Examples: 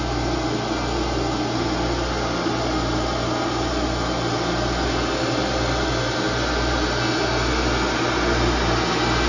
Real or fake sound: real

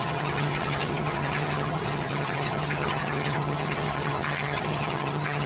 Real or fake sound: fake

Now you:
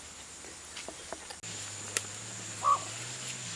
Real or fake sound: real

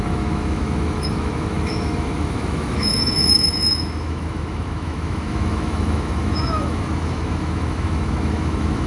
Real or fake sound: fake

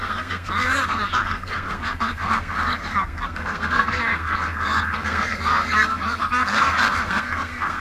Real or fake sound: fake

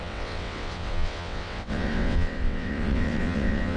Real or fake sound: fake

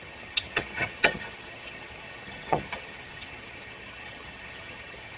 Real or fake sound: fake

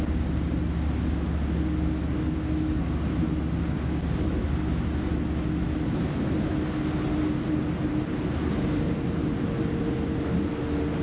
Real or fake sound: real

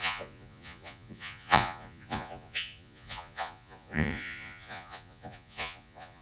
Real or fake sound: fake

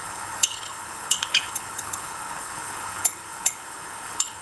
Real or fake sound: fake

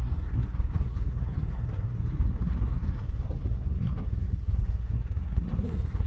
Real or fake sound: fake